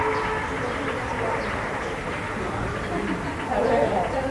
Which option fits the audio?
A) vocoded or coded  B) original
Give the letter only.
B